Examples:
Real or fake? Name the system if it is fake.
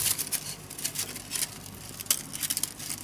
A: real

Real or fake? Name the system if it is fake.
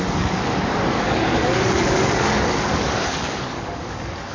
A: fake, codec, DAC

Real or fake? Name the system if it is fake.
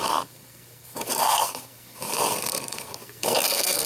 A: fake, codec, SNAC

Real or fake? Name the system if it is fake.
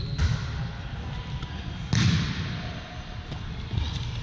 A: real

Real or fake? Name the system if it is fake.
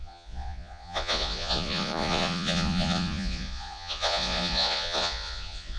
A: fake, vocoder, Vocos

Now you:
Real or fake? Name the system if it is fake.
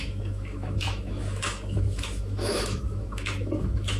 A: fake, autoencoder, DAC-VAE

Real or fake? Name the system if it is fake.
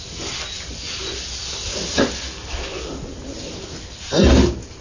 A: real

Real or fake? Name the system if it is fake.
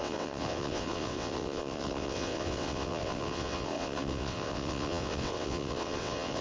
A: fake, vocoder, WaveNeXt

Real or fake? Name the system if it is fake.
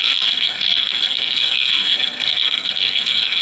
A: fake, codec, SNAC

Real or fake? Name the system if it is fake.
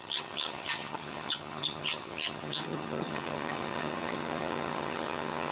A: fake, vocoder, HiFi-GAN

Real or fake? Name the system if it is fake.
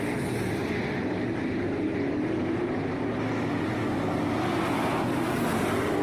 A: real